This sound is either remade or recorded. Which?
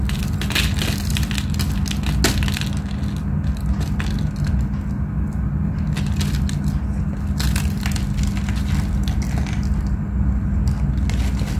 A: recorded